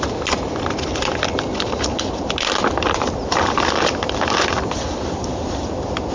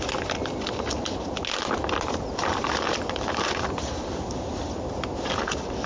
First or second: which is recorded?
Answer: second